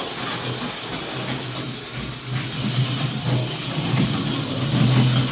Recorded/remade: recorded